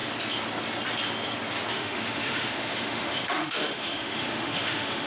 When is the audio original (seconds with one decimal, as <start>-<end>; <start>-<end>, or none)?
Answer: 0.0-1.7